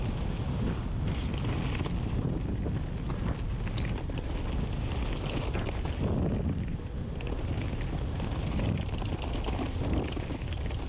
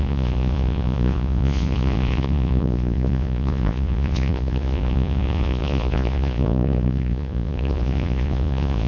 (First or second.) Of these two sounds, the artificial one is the second